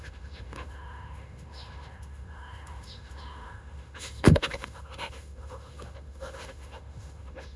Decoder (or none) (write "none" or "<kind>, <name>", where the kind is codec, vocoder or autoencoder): autoencoder, DAC-VAE